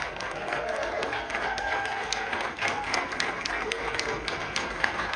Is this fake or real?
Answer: fake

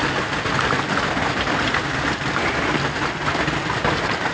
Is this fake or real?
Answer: real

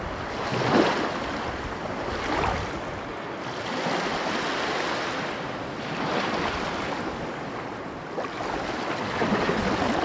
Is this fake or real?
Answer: real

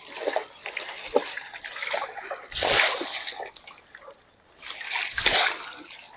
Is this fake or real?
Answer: real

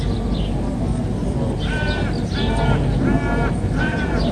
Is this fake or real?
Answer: real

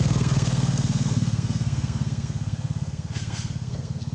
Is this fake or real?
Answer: fake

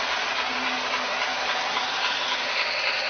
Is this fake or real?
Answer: real